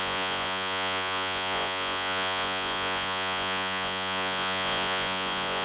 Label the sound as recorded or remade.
remade